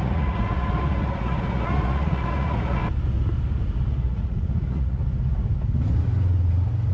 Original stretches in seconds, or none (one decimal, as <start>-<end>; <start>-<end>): 2.8-3.9; 5.0-6.9

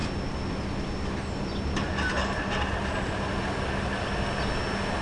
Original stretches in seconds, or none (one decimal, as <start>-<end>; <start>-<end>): 0.0-5.0

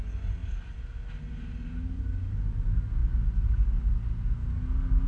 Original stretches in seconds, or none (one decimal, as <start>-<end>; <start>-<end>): 0.0-5.1

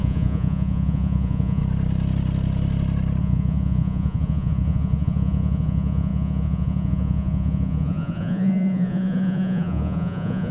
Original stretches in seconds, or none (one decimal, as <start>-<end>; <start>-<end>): 1.6-3.2

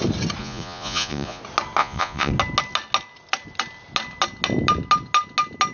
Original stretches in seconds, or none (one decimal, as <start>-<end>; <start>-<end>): 0.0-0.4; 1.4-1.8; 2.3-5.7

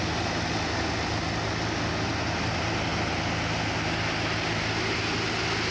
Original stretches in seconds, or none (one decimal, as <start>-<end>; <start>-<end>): 0.0-5.7

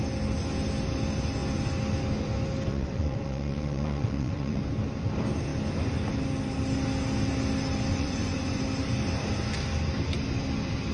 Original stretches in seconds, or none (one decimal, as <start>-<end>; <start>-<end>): 0.0-2.7; 4.6-7.9; 8.6-10.9

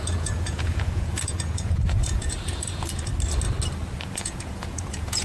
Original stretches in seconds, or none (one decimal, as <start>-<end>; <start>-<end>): 3.1-4.1